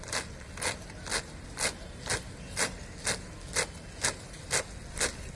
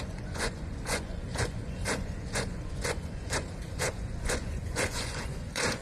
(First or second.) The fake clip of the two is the second